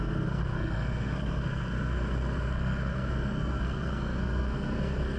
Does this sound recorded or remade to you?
remade